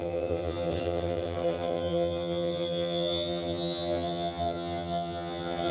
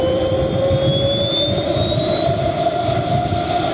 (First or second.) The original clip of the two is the second